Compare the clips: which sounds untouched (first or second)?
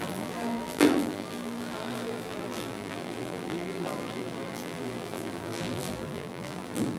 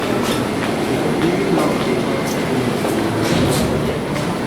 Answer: second